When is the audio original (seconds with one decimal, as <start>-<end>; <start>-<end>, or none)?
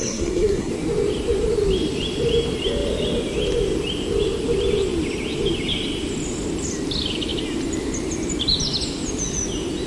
0.7-9.9